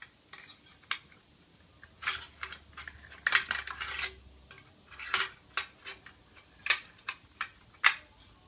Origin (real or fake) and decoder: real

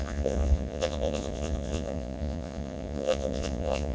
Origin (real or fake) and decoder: fake, vocoder, Vocos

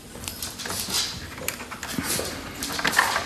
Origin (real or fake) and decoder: fake, vocoder, BigVGAN v2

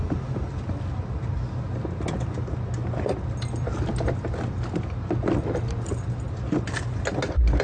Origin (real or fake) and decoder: real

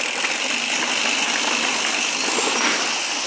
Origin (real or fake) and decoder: real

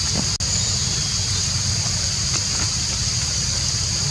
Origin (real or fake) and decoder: real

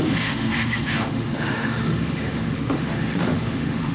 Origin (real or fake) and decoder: fake, autoencoder, DAC-VAE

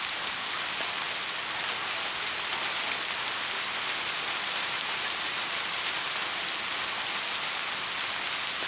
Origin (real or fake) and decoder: real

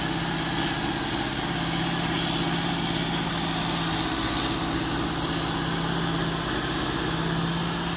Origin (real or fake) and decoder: real